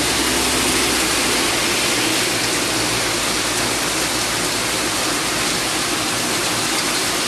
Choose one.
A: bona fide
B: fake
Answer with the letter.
A